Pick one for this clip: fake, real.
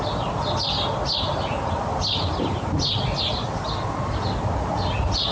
real